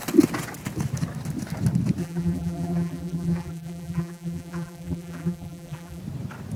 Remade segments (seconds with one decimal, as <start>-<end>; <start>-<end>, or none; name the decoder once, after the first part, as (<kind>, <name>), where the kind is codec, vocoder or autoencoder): 2.0-6.0 (vocoder, BigVGAN v2)